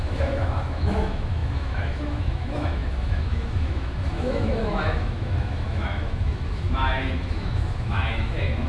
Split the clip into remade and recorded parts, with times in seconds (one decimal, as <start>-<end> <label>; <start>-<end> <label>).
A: 0.0-8.7 remade